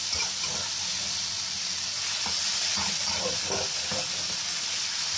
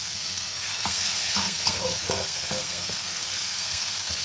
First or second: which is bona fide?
first